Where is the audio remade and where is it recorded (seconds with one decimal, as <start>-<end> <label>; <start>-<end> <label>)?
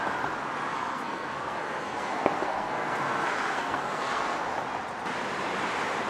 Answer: 0.0-0.7 recorded; 0.7-4.4 remade; 4.4-6.1 recorded